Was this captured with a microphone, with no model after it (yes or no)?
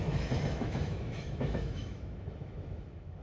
no